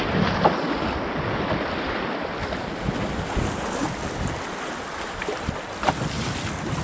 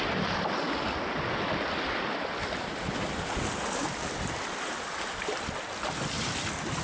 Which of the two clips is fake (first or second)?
second